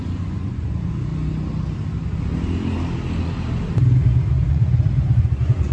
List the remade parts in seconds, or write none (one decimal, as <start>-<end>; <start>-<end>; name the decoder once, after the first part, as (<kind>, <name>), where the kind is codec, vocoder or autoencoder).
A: 0.0-1.1 (vocoder, Vocos); 4.5-5.7